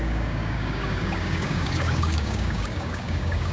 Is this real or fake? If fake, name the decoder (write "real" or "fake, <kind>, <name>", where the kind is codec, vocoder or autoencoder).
fake, codec, DAC